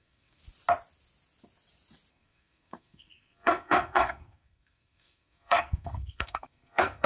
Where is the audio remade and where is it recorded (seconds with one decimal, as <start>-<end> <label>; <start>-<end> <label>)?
0.0-0.4 remade; 0.4-2.1 recorded; 2.1-7.1 remade